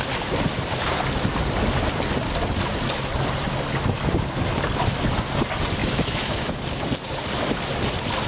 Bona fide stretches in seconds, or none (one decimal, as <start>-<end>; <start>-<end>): 0.0-5.8; 6.5-8.3

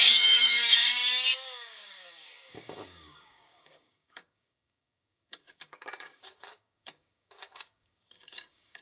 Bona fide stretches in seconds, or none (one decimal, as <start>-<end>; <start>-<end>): none